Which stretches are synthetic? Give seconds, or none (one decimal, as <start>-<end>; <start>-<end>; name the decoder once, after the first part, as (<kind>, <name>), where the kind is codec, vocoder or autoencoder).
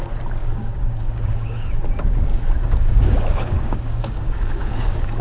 0.4-1.7 (codec, DAC); 2.3-5.2